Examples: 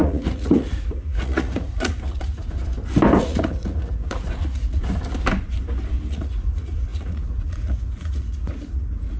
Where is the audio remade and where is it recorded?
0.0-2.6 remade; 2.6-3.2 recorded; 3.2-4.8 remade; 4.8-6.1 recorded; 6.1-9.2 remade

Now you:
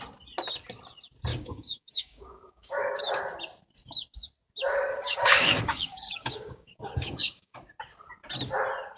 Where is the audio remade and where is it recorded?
0.0-1.3 recorded; 1.3-3.2 remade; 3.2-4.9 recorded; 4.9-7.6 remade; 7.6-9.0 recorded

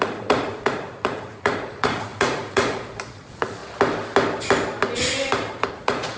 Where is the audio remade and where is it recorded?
0.0-3.6 remade; 3.6-5.7 recorded; 5.7-6.2 remade

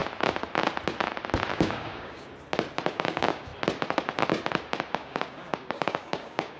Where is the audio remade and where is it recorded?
0.0-1.5 recorded; 1.5-2.3 remade; 2.3-2.9 recorded; 2.9-3.5 remade; 3.5-4.9 recorded; 4.9-6.6 remade